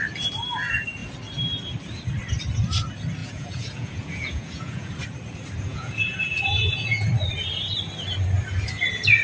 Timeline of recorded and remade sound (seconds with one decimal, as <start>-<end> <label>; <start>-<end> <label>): 0.0-3.2 recorded; 3.2-4.9 remade; 4.9-5.7 recorded; 5.7-7.1 remade; 7.1-9.2 recorded